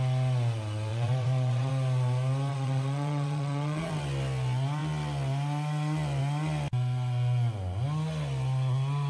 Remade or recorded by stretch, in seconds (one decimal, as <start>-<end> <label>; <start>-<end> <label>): 0.0-0.9 recorded; 0.9-1.7 remade; 1.7-2.5 recorded; 2.5-3.9 remade; 3.9-9.1 recorded